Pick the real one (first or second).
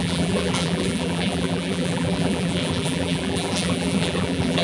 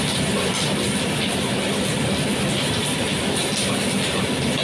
second